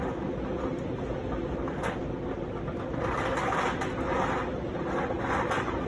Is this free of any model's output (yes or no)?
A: yes